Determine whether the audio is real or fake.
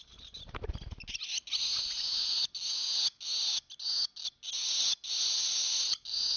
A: real